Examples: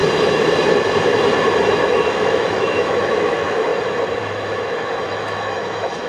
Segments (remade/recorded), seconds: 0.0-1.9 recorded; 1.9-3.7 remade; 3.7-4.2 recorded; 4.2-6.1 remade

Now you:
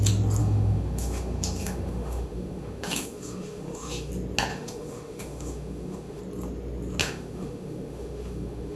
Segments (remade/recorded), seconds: 0.0-0.4 recorded; 0.4-4.1 remade; 4.1-4.5 recorded; 4.5-6.2 remade; 6.2-7.0 recorded; 7.0-8.8 remade

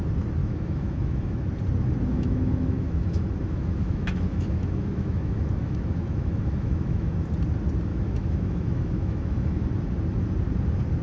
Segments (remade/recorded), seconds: 0.0-0.4 recorded; 0.4-1.5 remade; 1.5-2.1 recorded; 2.1-7.3 remade; 7.3-7.9 recorded; 7.9-9.7 remade; 9.7-11.0 recorded

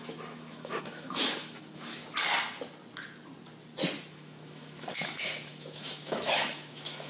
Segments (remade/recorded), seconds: 0.0-2.0 remade; 2.0-4.1 recorded; 4.1-7.1 remade